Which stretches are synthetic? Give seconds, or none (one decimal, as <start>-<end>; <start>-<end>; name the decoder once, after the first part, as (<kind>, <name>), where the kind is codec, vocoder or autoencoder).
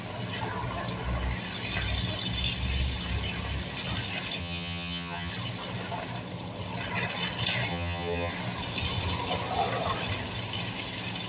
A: 4.4-5.3 (vocoder, HiFi-GAN); 7.7-8.3